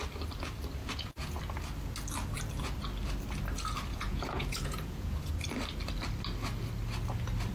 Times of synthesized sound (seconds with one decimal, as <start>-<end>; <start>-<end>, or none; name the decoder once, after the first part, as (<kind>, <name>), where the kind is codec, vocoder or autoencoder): 0.8-1.4 (vocoder, Vocos); 3.9-5.3